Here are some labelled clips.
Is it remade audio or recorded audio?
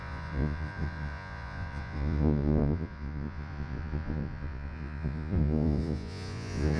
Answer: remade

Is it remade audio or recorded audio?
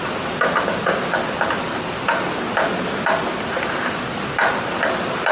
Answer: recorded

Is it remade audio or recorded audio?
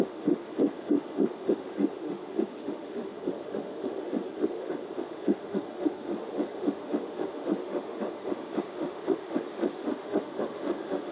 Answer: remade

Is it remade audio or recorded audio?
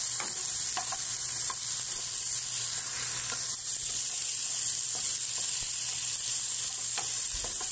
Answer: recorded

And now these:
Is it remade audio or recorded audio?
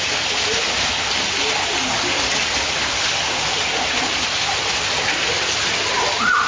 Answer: recorded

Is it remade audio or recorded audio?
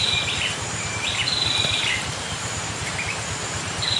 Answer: remade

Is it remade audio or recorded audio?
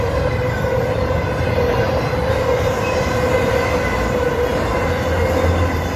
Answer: recorded